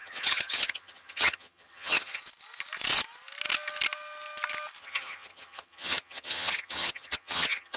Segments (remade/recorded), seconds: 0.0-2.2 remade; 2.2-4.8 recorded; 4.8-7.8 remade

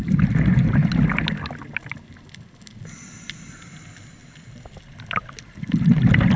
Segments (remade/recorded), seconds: 0.0-6.4 recorded

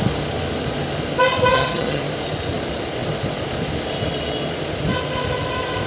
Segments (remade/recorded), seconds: 0.0-1.5 recorded; 1.5-2.0 remade; 2.0-5.9 recorded

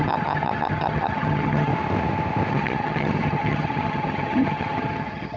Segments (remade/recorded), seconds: 0.0-1.7 remade; 1.7-2.5 recorded; 2.5-5.4 remade

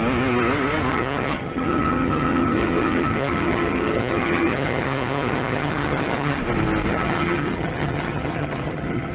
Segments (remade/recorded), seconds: 0.0-0.9 recorded; 0.9-6.4 remade; 6.4-6.9 recorded; 6.9-9.1 remade

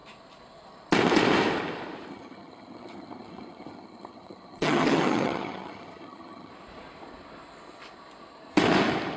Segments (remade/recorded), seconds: 0.0-2.1 recorded; 2.1-6.5 remade; 6.5-9.2 recorded

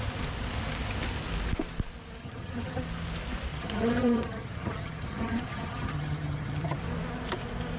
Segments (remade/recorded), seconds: 0.0-2.2 recorded; 2.2-2.8 remade; 2.8-3.5 recorded; 3.5-6.8 remade; 6.8-7.8 recorded

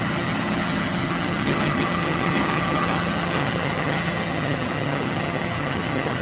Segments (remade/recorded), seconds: 0.0-6.2 remade